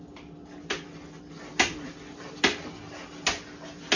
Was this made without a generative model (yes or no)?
yes